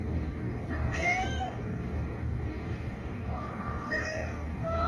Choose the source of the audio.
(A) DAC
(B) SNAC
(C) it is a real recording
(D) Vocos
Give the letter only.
A